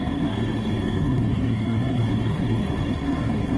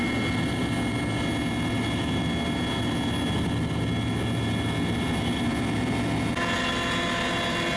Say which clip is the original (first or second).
second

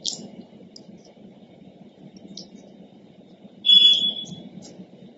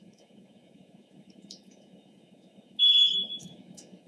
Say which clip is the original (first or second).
first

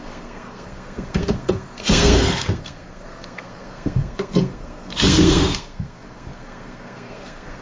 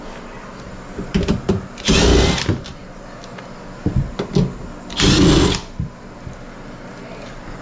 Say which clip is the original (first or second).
second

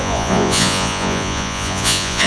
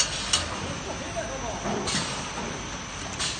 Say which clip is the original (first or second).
second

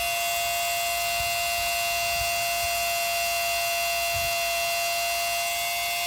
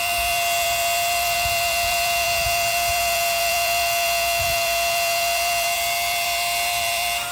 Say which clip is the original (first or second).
first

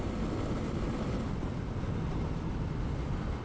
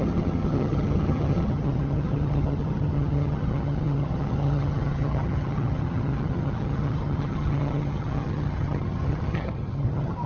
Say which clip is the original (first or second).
first